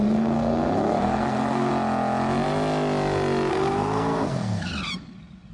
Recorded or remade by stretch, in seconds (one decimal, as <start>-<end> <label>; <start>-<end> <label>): 0.0-1.7 remade; 1.7-3.5 recorded; 3.5-4.7 remade; 4.7-5.5 recorded